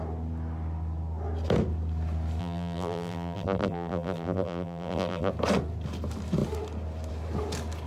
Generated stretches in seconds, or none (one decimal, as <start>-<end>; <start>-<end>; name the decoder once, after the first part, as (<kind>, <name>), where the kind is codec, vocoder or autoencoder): 2.4-5.3 (vocoder, BigVGAN v2)

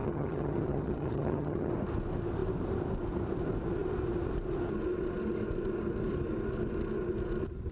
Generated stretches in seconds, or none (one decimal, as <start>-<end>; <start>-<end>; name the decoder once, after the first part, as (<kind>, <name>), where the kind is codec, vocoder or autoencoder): 0.0-1.7 (vocoder, HiFi-GAN)

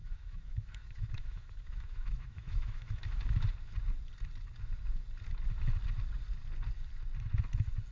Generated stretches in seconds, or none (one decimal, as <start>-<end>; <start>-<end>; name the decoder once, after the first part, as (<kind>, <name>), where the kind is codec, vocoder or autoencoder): 0.0-3.4 (autoencoder, DAC-VAE)

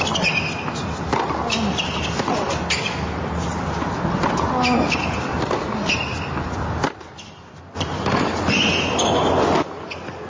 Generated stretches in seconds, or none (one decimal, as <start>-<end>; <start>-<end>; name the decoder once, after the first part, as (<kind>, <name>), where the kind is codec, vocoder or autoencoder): none